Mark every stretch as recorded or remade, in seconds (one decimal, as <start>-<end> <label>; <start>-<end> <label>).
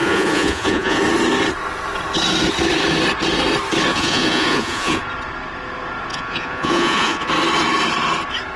0.0-1.0 remade; 1.0-3.9 recorded; 3.9-5.0 remade; 5.0-6.1 recorded; 6.1-7.3 remade; 7.3-8.6 recorded